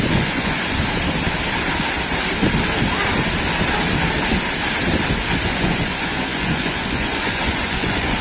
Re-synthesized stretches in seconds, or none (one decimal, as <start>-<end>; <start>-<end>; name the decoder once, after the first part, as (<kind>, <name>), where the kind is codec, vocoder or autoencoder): 0.0-0.8 (vocoder, Vocos); 5.4-8.2